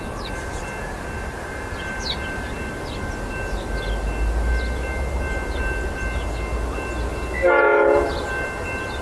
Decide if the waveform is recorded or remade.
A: recorded